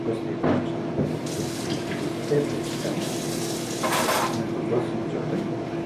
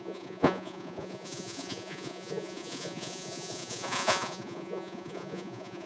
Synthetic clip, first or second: second